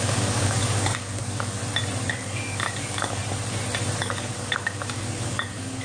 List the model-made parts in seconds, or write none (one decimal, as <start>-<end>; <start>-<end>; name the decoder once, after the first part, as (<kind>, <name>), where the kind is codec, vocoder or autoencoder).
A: 0.0-1.6 (codec, DAC); 2.1-3.2; 4.0-5.8